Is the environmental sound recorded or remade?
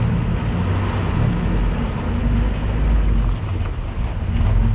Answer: recorded